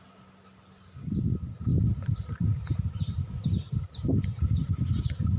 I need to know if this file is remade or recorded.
recorded